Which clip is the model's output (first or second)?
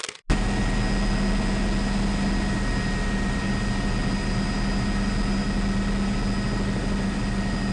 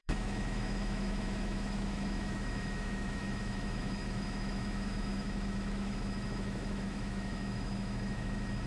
second